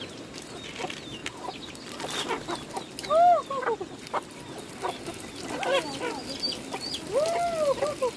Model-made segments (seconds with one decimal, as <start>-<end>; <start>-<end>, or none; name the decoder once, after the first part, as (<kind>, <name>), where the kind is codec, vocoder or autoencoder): none